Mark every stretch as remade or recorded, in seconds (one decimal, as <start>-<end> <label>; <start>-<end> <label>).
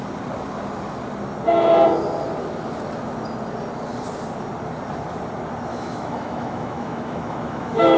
0.0-5.7 recorded; 5.7-8.0 remade